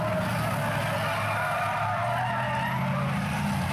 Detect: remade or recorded recorded